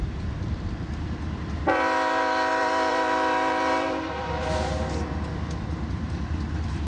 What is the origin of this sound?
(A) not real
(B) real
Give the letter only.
A